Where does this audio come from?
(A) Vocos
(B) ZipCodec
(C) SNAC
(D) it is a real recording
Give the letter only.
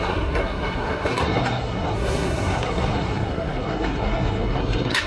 C